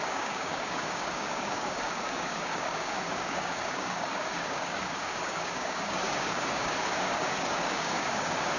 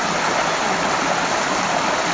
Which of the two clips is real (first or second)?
second